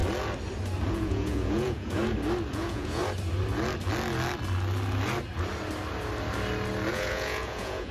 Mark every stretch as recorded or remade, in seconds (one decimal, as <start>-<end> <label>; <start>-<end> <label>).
0.0-0.9 recorded; 0.9-2.0 remade; 2.0-2.5 recorded; 2.5-3.0 remade; 3.0-6.9 recorded; 6.9-7.9 remade